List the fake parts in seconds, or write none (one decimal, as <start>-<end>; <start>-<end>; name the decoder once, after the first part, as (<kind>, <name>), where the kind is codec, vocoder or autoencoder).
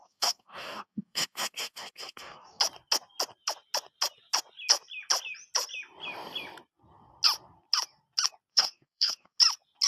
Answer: 0.0-2.6 (codec, DAC); 8.5-9.4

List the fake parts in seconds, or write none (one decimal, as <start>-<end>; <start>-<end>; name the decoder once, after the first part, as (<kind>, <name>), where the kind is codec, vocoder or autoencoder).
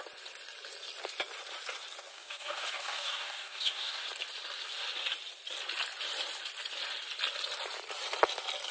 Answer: 2.1-4.0 (codec, DAC)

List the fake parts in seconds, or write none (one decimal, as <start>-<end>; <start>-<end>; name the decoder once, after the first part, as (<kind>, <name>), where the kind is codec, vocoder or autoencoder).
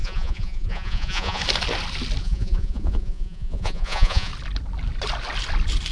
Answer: 0.0-1.4 (vocoder, Vocos); 2.2-4.3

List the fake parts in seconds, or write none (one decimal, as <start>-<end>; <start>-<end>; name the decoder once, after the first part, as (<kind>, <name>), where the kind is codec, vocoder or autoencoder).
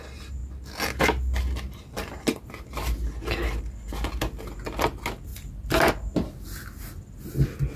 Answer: 5.3-5.9 (vocoder, BigVGAN v2)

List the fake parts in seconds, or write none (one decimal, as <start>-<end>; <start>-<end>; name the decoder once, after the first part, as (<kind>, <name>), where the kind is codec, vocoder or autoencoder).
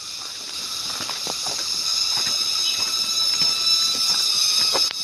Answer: 1.9-2.8 (vocoder, BigVGAN v2)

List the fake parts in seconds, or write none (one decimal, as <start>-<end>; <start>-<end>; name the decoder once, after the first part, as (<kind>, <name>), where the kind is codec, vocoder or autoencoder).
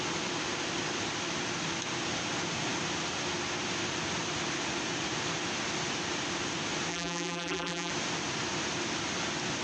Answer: 6.9-7.9 (vocoder, BigVGAN v2)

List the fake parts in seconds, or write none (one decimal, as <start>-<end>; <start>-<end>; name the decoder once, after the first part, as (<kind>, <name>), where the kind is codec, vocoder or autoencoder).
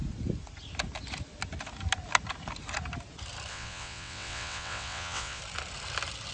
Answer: 3.5-5.4 (vocoder, WaveNeXt)